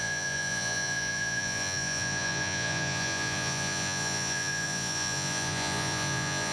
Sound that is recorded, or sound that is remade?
remade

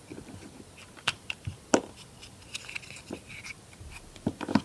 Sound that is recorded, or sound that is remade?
recorded